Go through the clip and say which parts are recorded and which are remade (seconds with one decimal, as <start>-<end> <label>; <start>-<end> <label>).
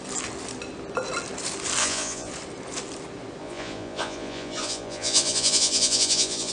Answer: 0.0-1.8 recorded; 1.8-2.3 remade; 2.3-3.4 recorded; 3.4-6.5 remade